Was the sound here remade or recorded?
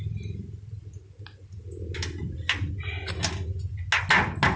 recorded